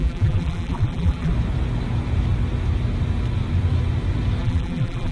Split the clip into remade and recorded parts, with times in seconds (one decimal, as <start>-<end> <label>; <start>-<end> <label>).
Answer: 0.0-1.3 remade; 1.3-4.4 recorded; 4.4-5.1 remade